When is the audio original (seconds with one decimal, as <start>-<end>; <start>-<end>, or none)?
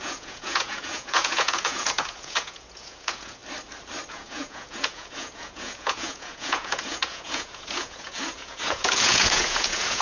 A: 3.4-4.1